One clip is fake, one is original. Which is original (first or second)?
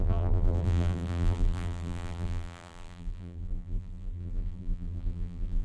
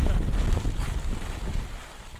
second